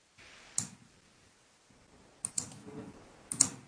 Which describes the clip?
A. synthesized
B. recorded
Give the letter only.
B